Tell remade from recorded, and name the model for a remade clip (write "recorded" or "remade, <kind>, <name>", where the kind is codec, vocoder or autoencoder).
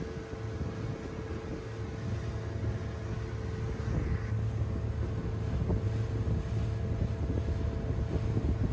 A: recorded